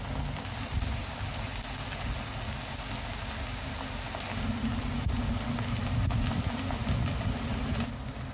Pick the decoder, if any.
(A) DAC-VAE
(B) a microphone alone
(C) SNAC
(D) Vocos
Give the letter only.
B